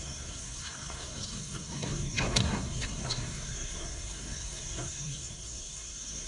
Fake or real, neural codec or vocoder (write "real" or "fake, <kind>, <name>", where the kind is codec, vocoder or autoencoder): fake, codec, SNAC